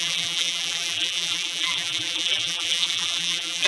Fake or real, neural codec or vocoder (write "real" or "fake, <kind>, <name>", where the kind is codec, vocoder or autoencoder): fake, vocoder, BigVGAN v2